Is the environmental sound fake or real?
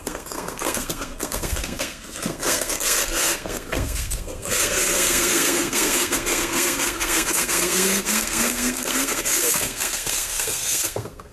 fake